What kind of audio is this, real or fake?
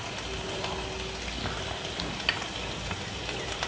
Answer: real